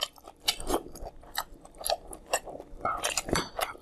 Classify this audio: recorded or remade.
remade